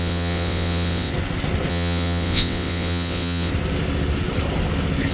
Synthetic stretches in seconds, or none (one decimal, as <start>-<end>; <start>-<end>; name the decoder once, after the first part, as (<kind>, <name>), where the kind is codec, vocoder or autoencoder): 0.0-1.1 (vocoder, WaveNeXt); 1.7-3.5

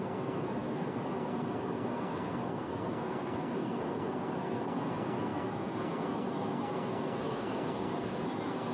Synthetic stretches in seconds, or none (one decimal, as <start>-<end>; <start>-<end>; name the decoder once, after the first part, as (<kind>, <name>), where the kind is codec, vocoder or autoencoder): 0.0-8.7 (codec, SNAC)

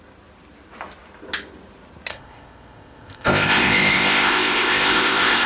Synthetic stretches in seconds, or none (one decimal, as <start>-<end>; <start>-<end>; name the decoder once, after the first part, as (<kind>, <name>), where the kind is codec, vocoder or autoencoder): 2.1-5.5 (codec, ZipCodec)

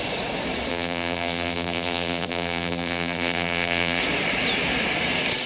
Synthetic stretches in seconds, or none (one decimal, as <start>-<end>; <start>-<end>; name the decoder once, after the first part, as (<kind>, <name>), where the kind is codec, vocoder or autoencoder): 0.7-4.0 (vocoder, BigVGAN v2)

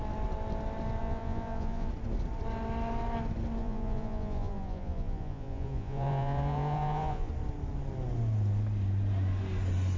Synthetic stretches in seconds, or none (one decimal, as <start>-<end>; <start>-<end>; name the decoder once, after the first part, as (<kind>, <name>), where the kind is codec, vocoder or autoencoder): 1.0-1.9 (vocoder, Vocos); 3.6-7.3

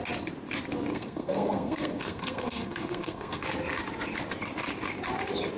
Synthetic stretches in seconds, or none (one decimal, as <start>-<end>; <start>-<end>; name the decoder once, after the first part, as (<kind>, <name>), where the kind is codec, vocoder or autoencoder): 0.9-3.4 (codec, SNAC)

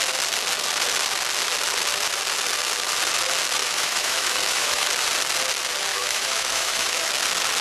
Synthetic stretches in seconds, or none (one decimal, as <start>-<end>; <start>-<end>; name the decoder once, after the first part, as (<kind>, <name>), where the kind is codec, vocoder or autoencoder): 3.6-4.9 (autoencoder, DAC-VAE); 5.9-7.1